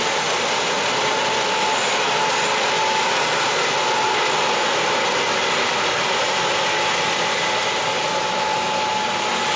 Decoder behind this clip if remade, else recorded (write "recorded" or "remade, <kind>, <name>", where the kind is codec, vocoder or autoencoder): recorded